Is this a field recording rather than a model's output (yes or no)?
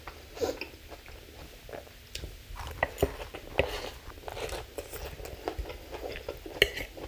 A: yes